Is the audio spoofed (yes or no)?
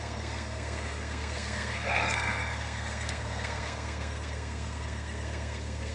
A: yes